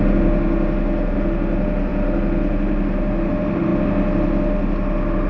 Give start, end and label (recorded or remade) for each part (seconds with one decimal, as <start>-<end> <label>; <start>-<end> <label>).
0.0-5.3 recorded